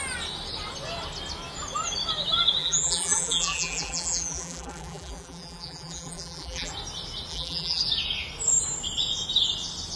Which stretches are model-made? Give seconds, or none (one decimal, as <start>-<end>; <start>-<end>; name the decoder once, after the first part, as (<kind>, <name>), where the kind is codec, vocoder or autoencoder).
2.6-6.7 (vocoder, BigVGAN v2); 7.3-7.8